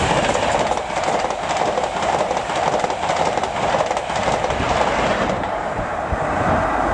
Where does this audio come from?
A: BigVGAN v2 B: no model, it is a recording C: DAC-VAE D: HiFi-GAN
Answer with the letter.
B